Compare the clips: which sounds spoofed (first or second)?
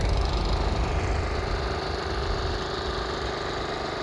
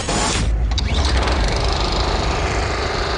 second